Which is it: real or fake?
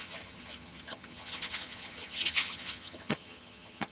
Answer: fake